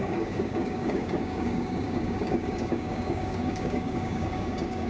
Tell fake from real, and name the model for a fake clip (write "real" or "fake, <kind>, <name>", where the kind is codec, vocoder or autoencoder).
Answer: fake, codec, DAC